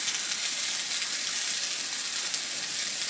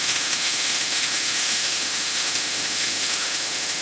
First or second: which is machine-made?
second